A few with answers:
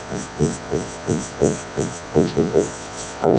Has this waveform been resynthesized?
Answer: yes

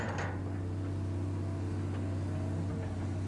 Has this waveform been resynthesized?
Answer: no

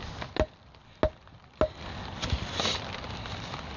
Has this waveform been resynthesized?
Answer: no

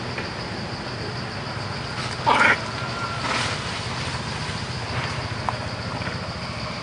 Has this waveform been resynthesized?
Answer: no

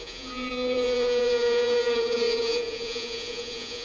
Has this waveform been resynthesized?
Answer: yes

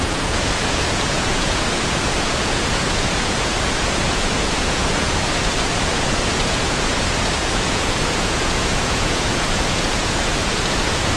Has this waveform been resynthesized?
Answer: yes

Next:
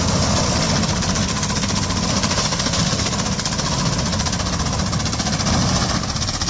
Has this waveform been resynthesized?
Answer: no